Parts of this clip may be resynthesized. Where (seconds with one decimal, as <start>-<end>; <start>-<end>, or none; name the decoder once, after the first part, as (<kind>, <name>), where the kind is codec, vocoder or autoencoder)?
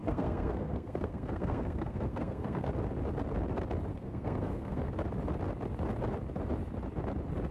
0.0-2.7 (codec, SNAC); 3.9-4.9